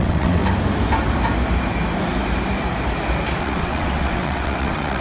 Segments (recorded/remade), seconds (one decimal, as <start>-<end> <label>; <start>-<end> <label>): 0.0-0.4 remade; 0.4-3.4 recorded; 3.4-5.0 remade